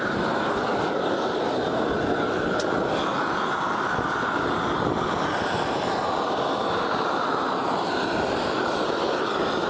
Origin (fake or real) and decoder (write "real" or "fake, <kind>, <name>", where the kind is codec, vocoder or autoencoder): real